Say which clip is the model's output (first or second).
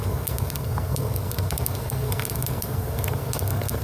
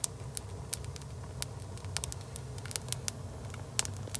first